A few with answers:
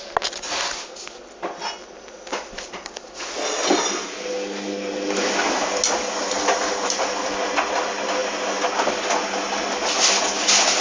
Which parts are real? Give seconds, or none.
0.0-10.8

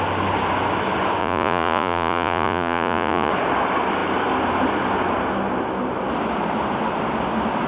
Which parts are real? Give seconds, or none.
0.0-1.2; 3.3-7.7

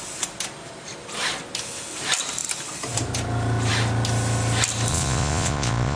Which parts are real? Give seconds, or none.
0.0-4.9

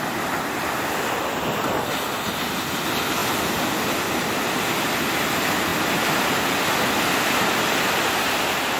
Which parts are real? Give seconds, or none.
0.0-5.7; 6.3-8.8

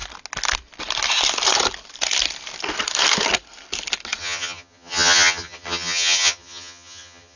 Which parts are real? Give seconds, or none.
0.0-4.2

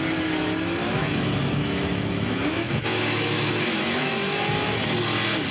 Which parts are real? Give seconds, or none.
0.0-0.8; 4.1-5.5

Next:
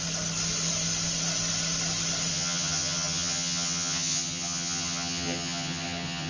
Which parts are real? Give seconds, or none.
0.0-2.3